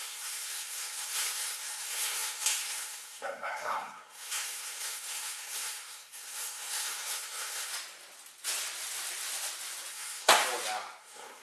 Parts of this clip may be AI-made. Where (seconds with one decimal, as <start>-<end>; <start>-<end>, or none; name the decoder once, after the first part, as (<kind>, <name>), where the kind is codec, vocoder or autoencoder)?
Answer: 0.0-7.7 (codec, SNAC); 9.9-10.4; 11.0-11.4